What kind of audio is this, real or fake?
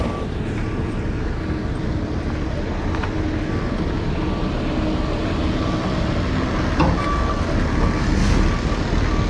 real